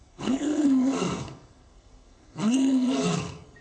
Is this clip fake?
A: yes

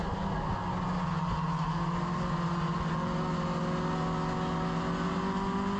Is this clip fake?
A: no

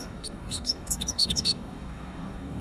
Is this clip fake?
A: yes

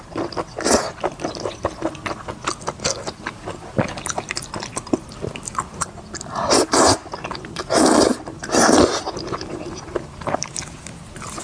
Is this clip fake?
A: no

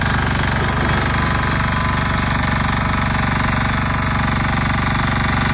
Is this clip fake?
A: no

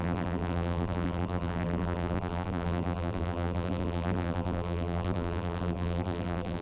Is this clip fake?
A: yes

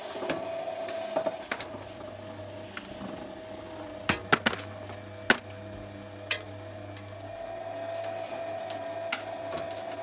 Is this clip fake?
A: no